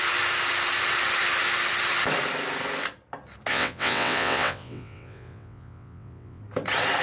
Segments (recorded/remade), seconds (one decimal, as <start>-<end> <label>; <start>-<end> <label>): 0.0-3.5 recorded; 3.5-6.4 remade; 6.4-7.0 recorded

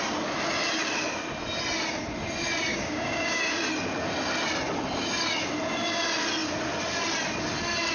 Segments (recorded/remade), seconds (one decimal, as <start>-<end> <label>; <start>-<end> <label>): 0.0-2.7 recorded; 2.7-3.4 remade; 3.4-7.9 recorded

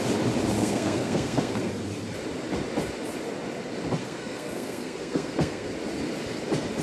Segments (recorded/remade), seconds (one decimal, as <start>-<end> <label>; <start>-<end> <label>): 0.0-0.6 recorded; 0.6-1.7 remade; 1.7-4.0 recorded; 4.0-5.7 remade; 5.7-6.8 recorded

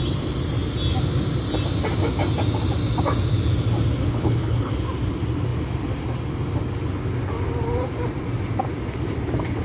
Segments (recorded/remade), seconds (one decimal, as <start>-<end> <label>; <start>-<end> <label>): 0.0-4.0 recorded; 4.0-4.7 remade; 4.7-9.6 recorded

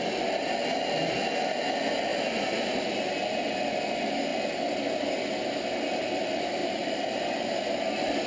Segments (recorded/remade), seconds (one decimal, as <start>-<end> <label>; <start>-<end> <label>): 0.0-2.1 recorded; 2.1-3.0 remade; 3.0-6.6 recorded; 6.6-7.2 remade; 7.2-8.3 recorded

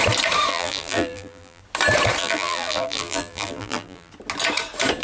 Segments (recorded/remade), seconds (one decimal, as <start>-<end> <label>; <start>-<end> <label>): 0.0-0.5 recorded; 0.5-1.6 remade; 1.6-2.2 recorded; 2.2-4.1 remade; 4.1-5.0 recorded

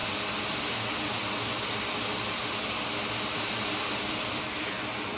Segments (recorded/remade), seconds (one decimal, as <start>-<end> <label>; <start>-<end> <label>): 0.0-0.5 recorded; 0.5-1.2 remade; 1.2-4.1 recorded; 4.1-5.2 remade